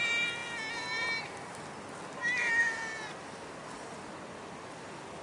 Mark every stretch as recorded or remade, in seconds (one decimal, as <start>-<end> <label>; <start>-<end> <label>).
0.0-5.2 recorded

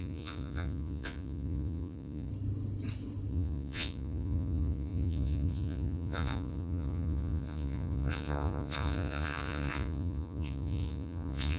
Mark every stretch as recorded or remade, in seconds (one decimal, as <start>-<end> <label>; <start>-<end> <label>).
0.0-2.3 remade; 2.3-3.3 recorded; 3.3-11.6 remade

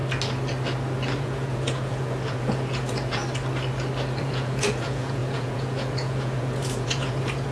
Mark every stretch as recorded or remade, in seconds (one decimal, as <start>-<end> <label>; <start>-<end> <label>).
0.0-1.2 recorded; 1.2-3.2 remade; 3.2-4.2 recorded; 4.2-7.5 remade